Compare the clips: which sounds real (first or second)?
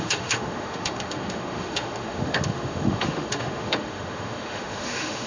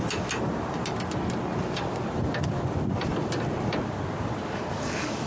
second